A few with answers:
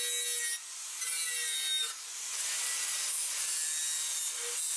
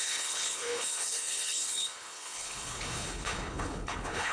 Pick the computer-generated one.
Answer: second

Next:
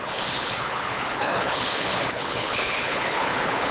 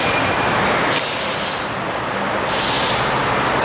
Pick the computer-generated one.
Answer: first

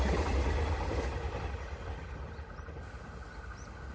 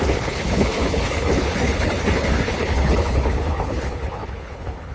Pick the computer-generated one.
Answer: second